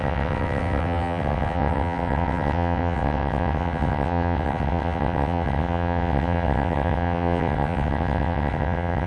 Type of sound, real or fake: fake